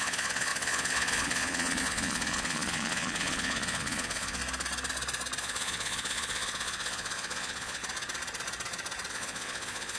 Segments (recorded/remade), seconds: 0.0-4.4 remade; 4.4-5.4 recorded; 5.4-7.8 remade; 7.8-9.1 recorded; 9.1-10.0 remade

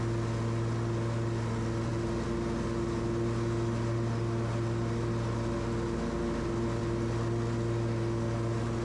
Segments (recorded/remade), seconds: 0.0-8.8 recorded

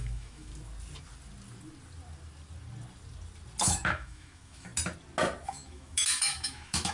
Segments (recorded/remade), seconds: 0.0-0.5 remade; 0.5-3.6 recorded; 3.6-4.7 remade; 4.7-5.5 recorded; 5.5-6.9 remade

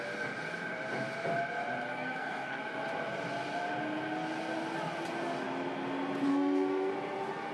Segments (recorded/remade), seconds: 0.0-1.9 recorded; 1.9-2.6 remade; 2.6-6.3 recorded; 6.3-6.9 remade; 6.9-7.5 recorded

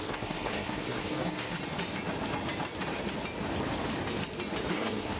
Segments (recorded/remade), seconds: 0.0-1.6 remade; 1.6-4.7 recorded; 4.7-5.2 remade

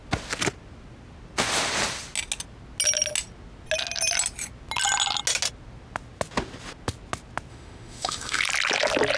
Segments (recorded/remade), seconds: 0.0-7.5 recorded; 7.5-8.4 remade; 8.4-9.2 recorded